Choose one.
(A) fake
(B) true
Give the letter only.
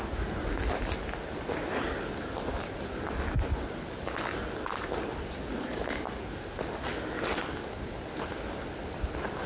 B